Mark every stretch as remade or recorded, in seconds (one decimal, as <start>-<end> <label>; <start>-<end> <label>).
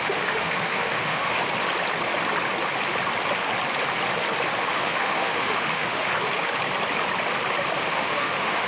0.0-1.4 remade; 1.4-4.6 recorded; 4.6-6.1 remade; 6.1-7.8 recorded; 7.8-8.7 remade